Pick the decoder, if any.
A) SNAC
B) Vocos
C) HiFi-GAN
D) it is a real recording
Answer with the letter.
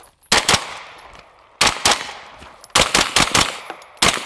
D